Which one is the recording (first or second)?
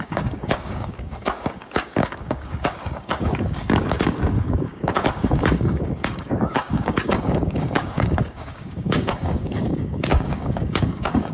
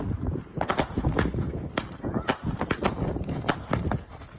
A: second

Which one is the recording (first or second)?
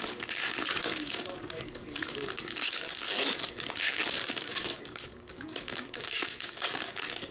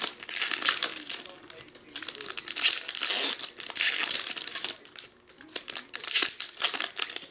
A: second